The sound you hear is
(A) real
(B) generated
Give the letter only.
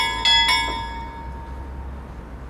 A